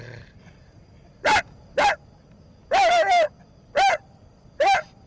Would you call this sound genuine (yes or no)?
yes